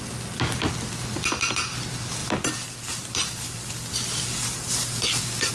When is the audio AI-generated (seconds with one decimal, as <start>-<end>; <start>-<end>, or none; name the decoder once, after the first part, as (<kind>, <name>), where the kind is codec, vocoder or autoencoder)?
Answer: none